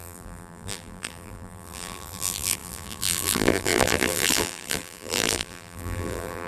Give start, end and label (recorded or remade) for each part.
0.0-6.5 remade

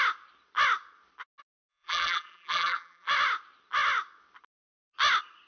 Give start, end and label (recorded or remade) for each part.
0.0-1.7 recorded; 1.7-3.1 remade; 3.1-5.5 recorded

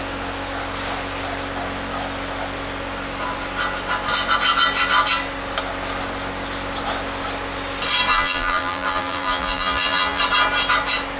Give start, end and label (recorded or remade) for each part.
0.0-8.1 recorded; 8.1-10.2 remade; 10.2-11.2 recorded

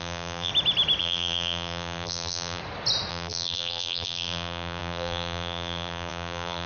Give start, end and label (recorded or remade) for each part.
0.0-0.5 remade; 0.5-1.0 recorded; 1.0-2.6 remade; 2.6-3.1 recorded; 3.1-6.7 remade

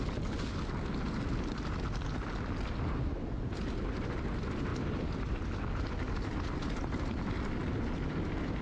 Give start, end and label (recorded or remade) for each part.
0.0-8.6 recorded